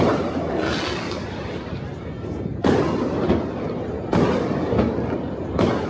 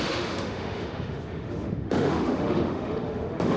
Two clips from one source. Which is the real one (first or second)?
first